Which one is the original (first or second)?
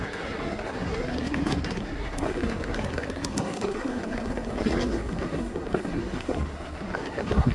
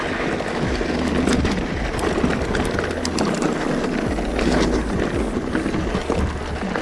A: second